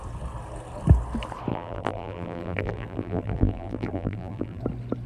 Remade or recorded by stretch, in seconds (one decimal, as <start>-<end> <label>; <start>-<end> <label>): 0.0-1.5 recorded; 1.5-4.6 remade; 4.6-5.1 recorded